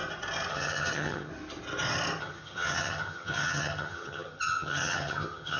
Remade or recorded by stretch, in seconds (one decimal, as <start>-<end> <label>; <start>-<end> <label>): 0.0-0.5 recorded; 0.5-1.3 remade; 1.3-2.2 recorded; 2.2-5.6 remade